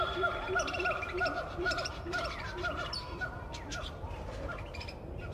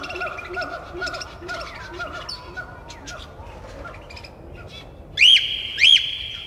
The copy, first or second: first